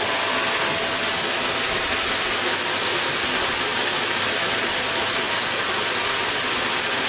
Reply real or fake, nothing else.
real